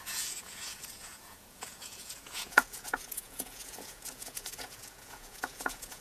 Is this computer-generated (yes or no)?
yes